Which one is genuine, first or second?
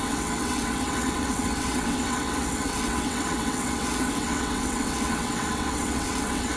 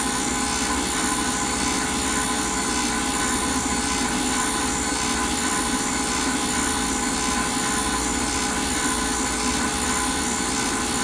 second